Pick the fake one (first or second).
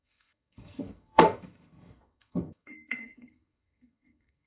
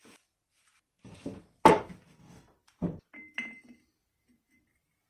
first